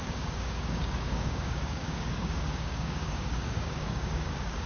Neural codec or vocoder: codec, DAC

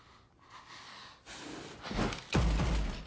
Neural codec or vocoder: none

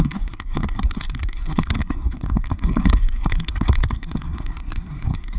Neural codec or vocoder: codec, SNAC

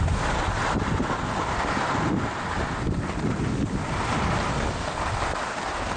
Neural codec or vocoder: none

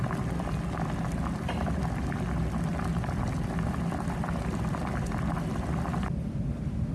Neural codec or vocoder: none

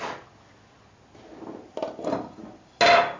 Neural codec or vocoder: none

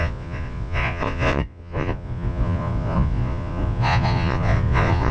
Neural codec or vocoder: vocoder, Vocos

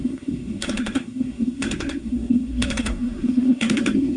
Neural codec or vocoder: codec, SNAC